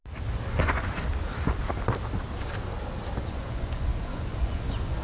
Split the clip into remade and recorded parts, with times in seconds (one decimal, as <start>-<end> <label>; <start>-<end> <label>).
0.0-0.6 recorded; 0.6-1.1 remade; 1.1-3.3 recorded; 3.3-5.0 remade